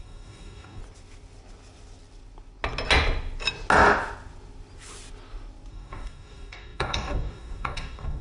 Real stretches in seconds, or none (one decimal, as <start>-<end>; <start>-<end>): 0.8-5.7

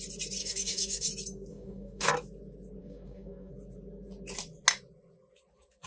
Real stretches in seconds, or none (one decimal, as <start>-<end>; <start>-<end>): 0.0-0.4; 1.1-1.5; 2.1-2.8; 3.5-5.9

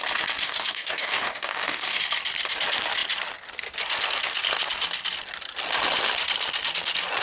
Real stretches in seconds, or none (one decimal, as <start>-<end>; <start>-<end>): 0.0-0.4; 2.0-7.2

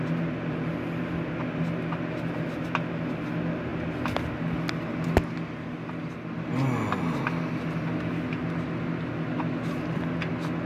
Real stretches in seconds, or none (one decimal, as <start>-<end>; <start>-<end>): 0.0-10.7

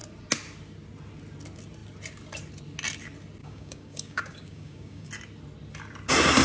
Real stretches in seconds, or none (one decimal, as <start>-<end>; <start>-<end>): 0.0-3.4; 5.1-6.4

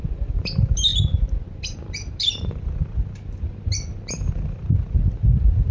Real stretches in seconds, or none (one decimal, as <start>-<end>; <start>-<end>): 0.0-5.7